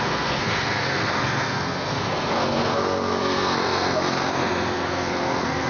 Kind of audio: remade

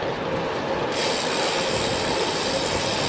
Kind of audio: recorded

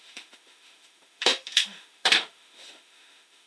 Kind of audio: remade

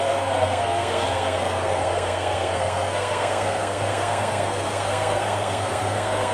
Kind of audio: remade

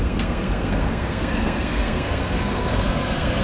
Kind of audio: remade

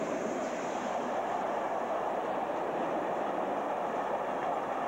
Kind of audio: recorded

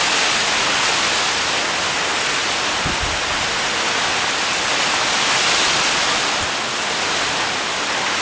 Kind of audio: recorded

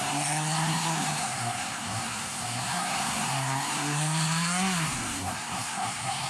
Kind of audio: remade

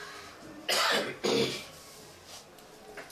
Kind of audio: recorded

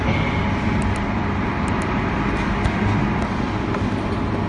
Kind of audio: recorded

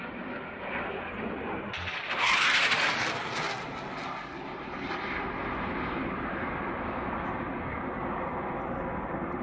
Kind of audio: recorded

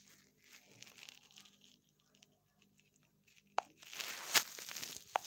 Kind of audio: recorded